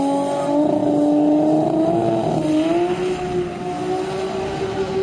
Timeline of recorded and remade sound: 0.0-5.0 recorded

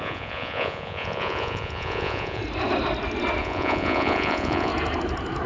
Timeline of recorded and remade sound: 0.0-2.4 remade; 2.4-3.4 recorded; 3.4-4.7 remade; 4.7-5.5 recorded

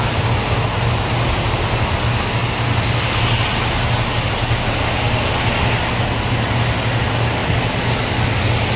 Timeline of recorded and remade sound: 0.0-8.8 recorded

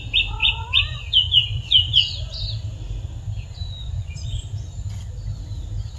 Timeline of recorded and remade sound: 0.0-0.4 recorded; 0.4-2.4 remade; 2.4-3.5 recorded; 3.5-4.4 remade; 4.4-6.0 recorded

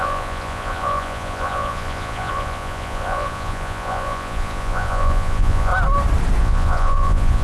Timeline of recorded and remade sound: 0.0-5.7 remade; 5.7-6.4 recorded; 6.4-7.4 remade

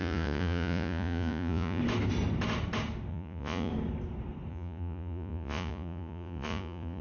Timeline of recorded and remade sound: 0.0-1.8 remade; 1.8-3.1 recorded; 3.1-3.7 remade; 3.7-4.5 recorded; 4.5-7.0 remade

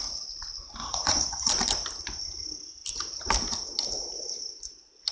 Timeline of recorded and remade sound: 0.0-0.8 recorded; 0.8-1.5 remade; 1.5-5.1 recorded

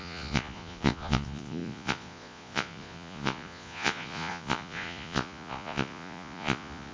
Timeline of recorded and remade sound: 0.0-6.9 remade